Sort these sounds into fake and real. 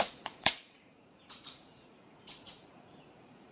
fake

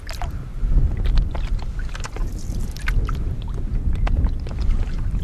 real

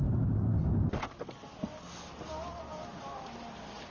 real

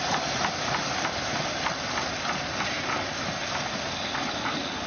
real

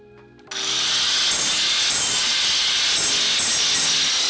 real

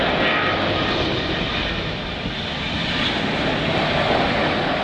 real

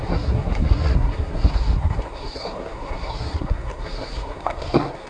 fake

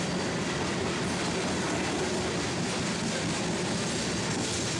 real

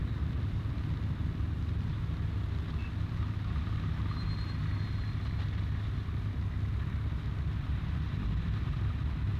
fake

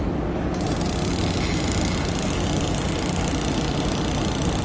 real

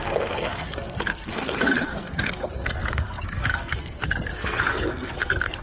fake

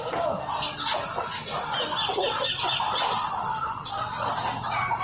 real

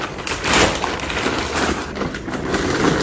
real